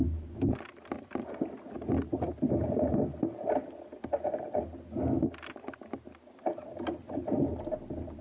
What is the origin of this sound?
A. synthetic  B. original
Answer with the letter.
B